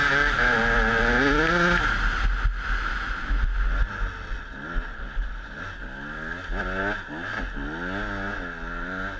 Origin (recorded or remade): recorded